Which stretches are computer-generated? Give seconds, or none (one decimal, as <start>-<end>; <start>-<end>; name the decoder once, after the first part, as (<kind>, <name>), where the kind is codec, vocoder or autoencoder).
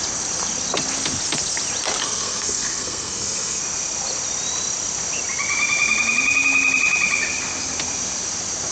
2.0-3.6 (codec, SNAC)